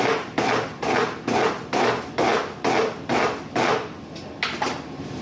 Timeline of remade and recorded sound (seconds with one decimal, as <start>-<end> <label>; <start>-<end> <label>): 0.0-2.3 remade; 2.3-4.6 recorded; 4.6-5.2 remade